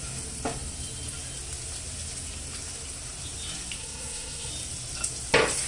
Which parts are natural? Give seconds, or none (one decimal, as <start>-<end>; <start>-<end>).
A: 0.0-3.8; 4.5-5.7